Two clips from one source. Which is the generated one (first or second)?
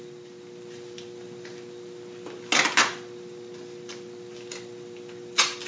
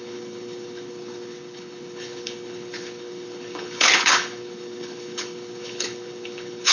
second